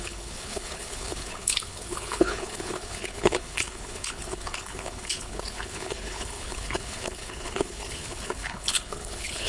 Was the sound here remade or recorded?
remade